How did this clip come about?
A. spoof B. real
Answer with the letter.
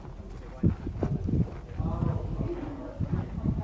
B